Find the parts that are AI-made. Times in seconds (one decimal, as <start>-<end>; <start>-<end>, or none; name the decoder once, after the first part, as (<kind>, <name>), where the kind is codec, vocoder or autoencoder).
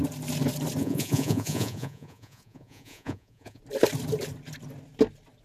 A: 0.8-3.6 (vocoder, Vocos)